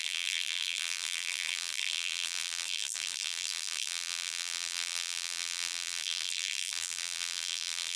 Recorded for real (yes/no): no